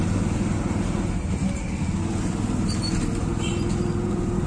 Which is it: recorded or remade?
recorded